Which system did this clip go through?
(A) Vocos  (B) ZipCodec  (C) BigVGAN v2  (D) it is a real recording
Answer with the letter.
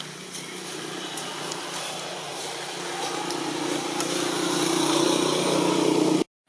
D